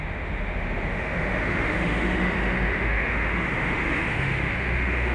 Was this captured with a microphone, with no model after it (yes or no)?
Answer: no